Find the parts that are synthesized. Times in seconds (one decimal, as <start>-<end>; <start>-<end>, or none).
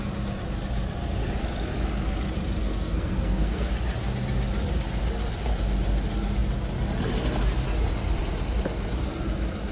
2.6-3.7